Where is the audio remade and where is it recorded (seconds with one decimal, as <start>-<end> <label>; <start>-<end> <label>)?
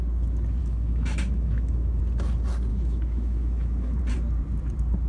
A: 0.0-0.6 recorded; 0.6-2.0 remade; 2.0-2.7 recorded; 2.7-4.0 remade; 4.0-5.1 recorded